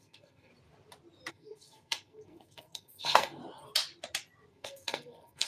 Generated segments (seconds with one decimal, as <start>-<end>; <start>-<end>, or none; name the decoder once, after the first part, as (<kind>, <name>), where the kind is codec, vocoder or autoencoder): 0.0-0.5 (codec, SNAC); 1.3-3.4; 4.5-5.5